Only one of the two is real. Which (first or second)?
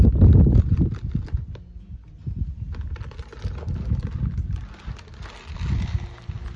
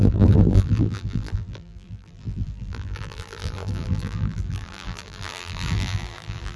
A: first